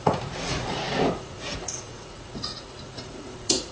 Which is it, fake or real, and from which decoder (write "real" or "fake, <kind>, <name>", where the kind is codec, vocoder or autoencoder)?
fake, vocoder, Vocos